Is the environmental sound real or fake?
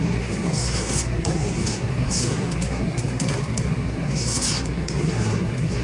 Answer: fake